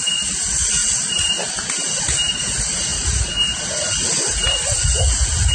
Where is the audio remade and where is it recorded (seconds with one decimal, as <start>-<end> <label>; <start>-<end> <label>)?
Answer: 0.0-5.5 recorded